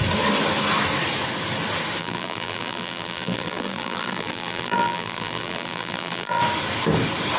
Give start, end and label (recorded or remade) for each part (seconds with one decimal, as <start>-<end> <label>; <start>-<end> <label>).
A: 0.0-2.0 recorded; 2.0-6.4 remade; 6.4-7.4 recorded